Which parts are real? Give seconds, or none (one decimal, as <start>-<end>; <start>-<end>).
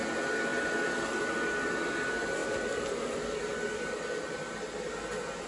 0.0-5.5